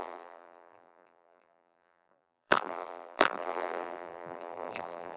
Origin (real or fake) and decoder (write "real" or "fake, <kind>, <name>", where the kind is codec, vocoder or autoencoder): fake, vocoder, BigVGAN v2